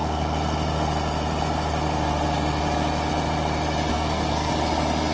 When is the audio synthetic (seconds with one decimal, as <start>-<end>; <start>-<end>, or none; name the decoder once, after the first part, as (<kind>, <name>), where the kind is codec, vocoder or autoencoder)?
3.9-4.5 (codec, SNAC)